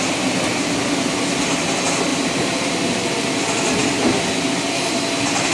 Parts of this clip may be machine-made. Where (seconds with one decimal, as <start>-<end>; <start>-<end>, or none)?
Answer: 2.1-2.7